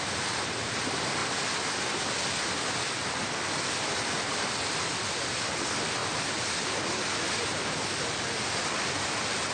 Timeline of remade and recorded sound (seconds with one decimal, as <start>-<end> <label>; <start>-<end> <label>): 0.0-9.5 recorded